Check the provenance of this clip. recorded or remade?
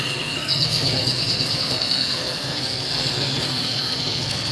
remade